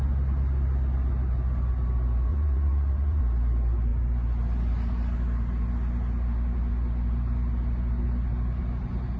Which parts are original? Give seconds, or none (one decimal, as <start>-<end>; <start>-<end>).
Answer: 0.0-2.3; 3.2-9.2